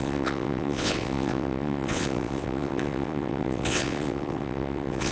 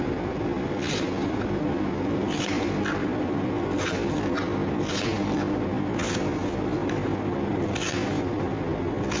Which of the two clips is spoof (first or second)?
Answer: first